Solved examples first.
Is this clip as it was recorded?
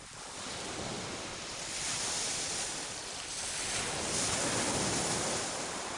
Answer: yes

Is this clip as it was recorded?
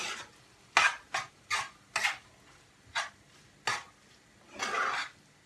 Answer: yes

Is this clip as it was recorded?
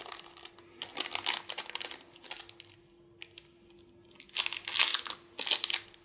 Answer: yes